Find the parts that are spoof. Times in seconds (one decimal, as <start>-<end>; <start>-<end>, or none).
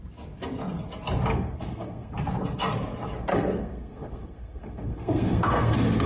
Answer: 1.3-2.1; 3.3-6.1